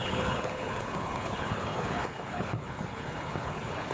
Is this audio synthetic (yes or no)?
yes